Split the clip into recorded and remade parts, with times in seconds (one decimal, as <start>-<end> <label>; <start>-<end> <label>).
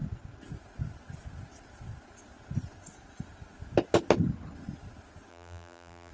0.0-5.3 recorded; 5.3-6.1 remade